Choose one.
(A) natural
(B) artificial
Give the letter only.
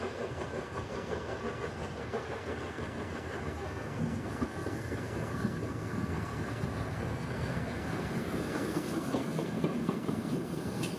B